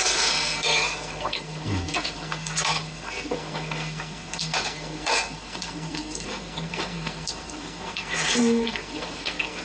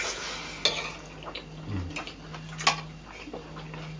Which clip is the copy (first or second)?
first